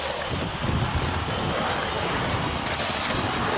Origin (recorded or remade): recorded